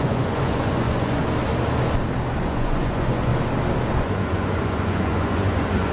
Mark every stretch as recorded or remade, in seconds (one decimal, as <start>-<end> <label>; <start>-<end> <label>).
0.0-1.2 remade; 1.2-2.4 recorded; 2.4-3.3 remade; 3.3-4.0 recorded; 4.0-5.9 remade

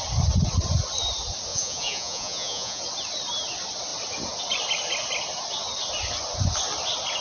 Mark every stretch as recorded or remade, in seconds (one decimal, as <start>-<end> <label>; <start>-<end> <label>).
0.0-1.5 recorded; 1.5-2.8 remade; 2.8-7.2 recorded

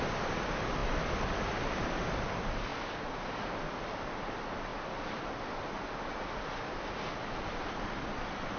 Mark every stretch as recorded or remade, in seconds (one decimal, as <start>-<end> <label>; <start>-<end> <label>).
0.0-8.6 recorded

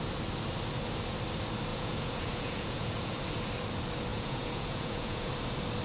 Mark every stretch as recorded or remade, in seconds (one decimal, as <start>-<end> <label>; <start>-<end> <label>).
0.0-1.7 recorded; 1.7-3.2 remade; 3.2-4.1 recorded; 4.1-5.3 remade; 5.3-5.8 recorded

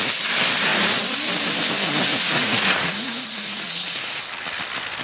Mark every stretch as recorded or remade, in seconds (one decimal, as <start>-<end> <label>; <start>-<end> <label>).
0.0-2.1 recorded; 2.1-4.2 remade; 4.2-5.0 recorded

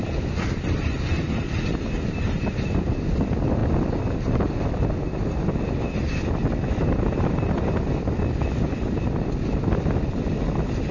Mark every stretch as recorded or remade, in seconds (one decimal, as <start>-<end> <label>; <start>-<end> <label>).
0.0-10.9 recorded

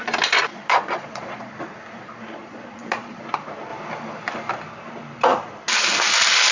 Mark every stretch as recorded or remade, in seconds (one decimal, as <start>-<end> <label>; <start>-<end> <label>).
0.0-0.5 recorded; 0.5-1.5 remade; 1.5-2.4 recorded; 2.4-3.2 remade; 3.2-6.5 recorded